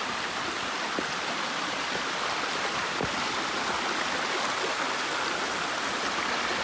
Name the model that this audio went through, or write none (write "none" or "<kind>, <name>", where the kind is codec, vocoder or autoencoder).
none